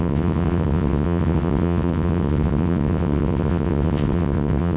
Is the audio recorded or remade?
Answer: remade